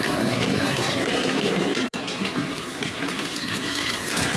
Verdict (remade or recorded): remade